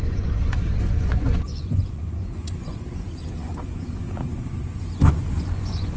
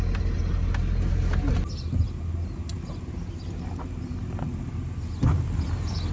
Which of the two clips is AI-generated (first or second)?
first